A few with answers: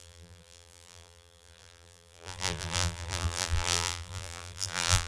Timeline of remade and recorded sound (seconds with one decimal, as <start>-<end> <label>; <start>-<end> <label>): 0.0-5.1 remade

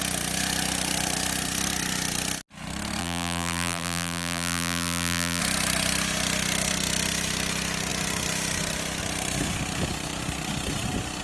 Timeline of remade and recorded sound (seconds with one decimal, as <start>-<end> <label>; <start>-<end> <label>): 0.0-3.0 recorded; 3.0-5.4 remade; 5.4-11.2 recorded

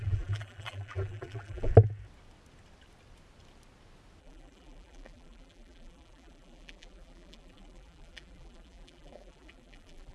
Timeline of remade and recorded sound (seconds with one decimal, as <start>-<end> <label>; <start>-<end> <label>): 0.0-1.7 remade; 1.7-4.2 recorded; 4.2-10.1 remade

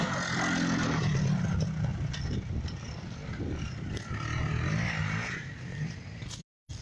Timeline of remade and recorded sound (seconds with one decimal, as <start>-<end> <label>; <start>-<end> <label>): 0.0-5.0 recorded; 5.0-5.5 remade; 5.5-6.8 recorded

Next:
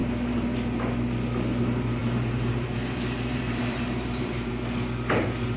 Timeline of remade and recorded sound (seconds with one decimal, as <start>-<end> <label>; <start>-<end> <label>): 0.0-2.0 recorded; 2.0-4.5 remade; 4.5-5.6 recorded

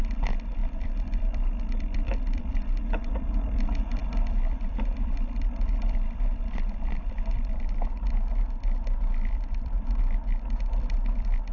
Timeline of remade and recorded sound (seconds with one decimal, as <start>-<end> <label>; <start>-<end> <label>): 0.0-11.5 remade

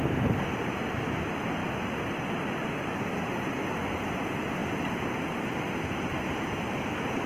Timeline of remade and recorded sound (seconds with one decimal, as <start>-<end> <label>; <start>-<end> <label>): 0.0-7.3 recorded